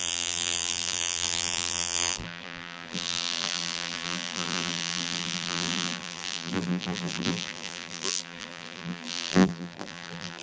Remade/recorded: remade